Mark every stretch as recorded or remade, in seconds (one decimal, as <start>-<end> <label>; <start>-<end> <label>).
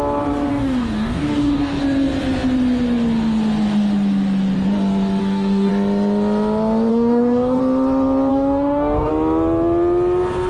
0.0-0.5 recorded; 0.5-1.8 remade; 1.8-5.2 recorded; 5.2-5.7 remade; 5.7-6.9 recorded; 6.9-7.6 remade; 7.6-8.3 recorded; 8.3-9.1 remade; 9.1-10.5 recorded